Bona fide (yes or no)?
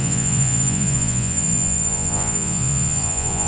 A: no